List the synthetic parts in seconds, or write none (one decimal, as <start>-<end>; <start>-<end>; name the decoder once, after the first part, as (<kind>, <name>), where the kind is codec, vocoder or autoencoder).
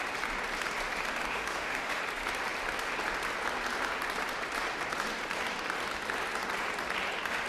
1.2-2.0 (autoencoder, DAC-VAE)